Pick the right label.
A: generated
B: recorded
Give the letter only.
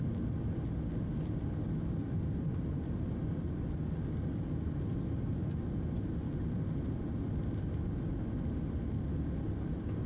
B